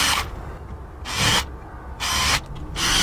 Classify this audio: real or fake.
real